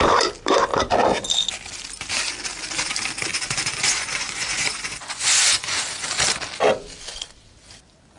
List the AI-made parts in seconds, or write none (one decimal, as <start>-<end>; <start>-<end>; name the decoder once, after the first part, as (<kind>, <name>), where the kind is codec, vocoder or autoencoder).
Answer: 3.3-6.1 (vocoder, Vocos)